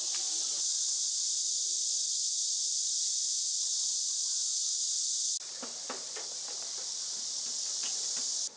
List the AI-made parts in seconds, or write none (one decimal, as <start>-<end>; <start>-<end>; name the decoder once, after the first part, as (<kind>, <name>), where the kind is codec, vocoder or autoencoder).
none